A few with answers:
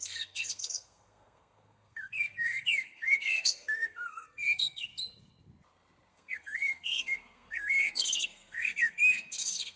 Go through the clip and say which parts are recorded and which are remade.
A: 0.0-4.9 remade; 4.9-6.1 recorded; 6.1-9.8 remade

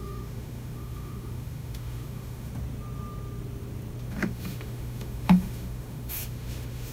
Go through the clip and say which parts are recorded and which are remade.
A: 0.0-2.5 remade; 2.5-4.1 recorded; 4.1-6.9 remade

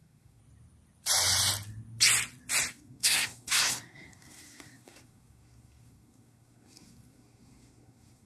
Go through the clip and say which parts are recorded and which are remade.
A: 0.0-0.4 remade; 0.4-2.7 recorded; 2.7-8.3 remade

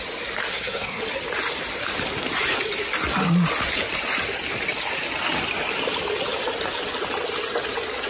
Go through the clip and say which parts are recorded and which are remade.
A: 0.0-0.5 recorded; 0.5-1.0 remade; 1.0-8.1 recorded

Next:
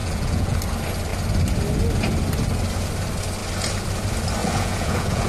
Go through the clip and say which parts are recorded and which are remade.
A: 0.0-0.6 remade; 0.6-4.4 recorded; 4.4-5.3 remade

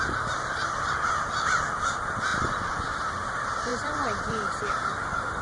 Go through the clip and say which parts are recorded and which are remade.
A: 0.0-5.4 remade